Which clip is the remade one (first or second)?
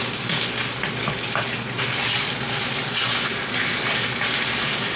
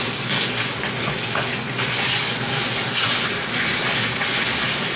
second